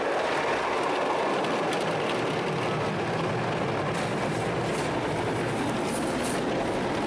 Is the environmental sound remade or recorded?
recorded